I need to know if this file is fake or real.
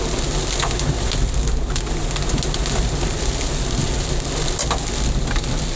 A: real